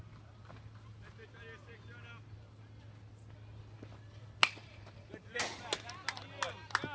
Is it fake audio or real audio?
real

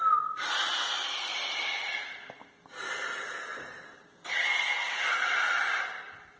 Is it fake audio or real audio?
real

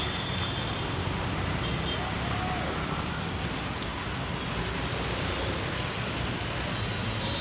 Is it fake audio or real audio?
real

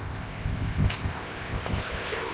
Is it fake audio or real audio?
fake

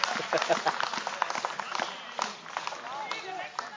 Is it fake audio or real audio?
real